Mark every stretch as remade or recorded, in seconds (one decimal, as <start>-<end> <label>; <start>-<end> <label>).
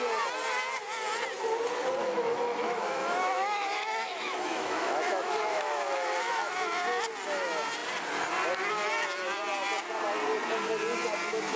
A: 0.0-2.0 recorded; 2.0-6.5 remade; 6.5-11.6 recorded